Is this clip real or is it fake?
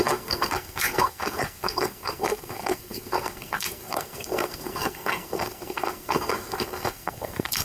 fake